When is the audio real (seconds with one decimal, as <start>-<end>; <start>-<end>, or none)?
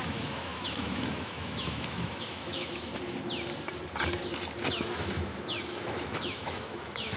2.9-4.7